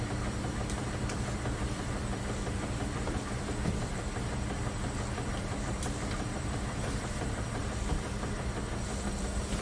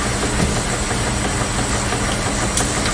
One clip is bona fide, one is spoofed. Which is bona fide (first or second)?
second